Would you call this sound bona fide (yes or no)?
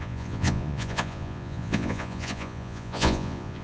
no